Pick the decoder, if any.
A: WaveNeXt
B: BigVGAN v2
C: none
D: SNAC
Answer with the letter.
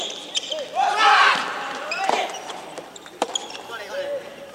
B